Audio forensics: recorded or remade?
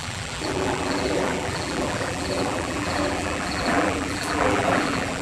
remade